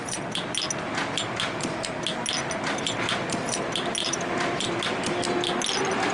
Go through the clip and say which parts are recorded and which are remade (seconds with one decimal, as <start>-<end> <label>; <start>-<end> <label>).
0.0-4.0 recorded; 4.0-5.1 remade; 5.1-6.1 recorded